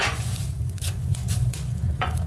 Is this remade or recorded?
remade